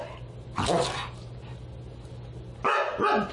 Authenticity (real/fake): real